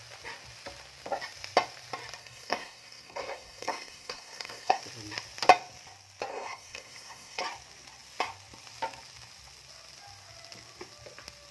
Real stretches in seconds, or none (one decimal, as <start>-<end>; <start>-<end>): 0.0-2.2; 4.8-6.3; 7.4-11.5